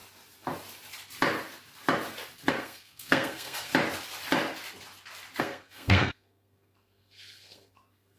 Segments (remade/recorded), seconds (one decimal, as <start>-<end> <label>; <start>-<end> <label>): 0.0-2.5 recorded; 2.5-3.7 remade; 3.7-5.4 recorded; 5.4-8.2 remade